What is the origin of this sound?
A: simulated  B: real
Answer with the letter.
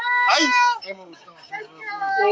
A